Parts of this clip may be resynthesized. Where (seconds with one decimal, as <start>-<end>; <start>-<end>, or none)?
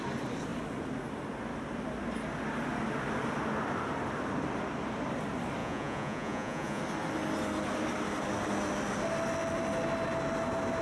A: 5.6-6.8